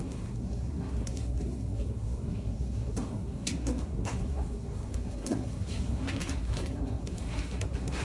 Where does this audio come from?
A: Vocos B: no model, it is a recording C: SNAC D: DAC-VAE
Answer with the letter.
C